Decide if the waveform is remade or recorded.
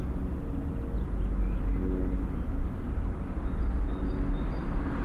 recorded